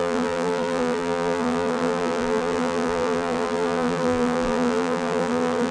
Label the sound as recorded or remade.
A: remade